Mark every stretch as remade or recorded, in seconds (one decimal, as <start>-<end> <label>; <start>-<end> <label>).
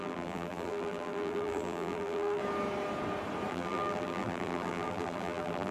0.0-2.4 remade; 2.4-3.5 recorded; 3.5-5.7 remade